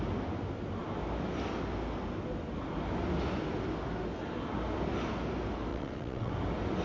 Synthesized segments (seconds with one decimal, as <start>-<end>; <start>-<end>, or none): 5.7-6.3